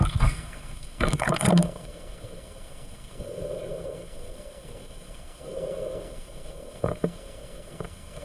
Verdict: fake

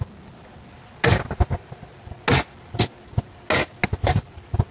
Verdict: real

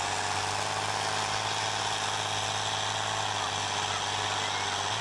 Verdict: real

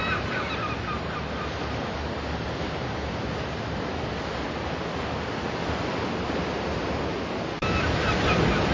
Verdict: real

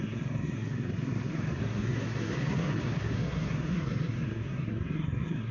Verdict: fake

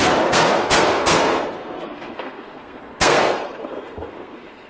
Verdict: fake